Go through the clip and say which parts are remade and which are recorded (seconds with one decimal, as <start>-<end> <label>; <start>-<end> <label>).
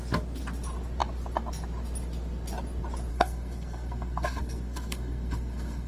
0.0-3.1 recorded; 3.1-5.9 remade